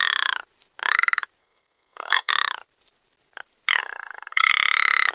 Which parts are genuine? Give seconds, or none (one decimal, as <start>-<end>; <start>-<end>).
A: 0.0-1.4; 2.3-3.8; 4.5-5.1

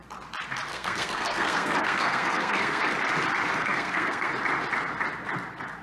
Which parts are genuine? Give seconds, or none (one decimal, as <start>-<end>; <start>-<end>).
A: 0.0-0.7; 2.9-3.6; 4.3-5.8